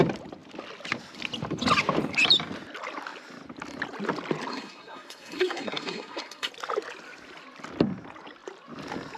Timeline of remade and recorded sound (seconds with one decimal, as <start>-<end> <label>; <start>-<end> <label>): 0.0-4.5 recorded; 4.5-6.5 remade; 6.5-9.2 recorded